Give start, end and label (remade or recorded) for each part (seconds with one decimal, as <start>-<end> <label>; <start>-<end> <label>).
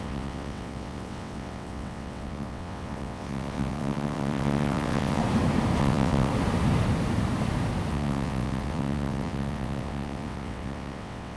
0.0-5.2 remade; 5.2-5.8 recorded; 5.8-6.3 remade; 6.3-7.9 recorded; 7.9-11.4 remade